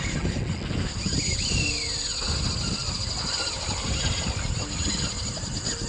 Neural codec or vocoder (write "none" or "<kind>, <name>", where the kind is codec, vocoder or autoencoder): none